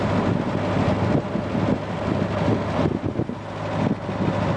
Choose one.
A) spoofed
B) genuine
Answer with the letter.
B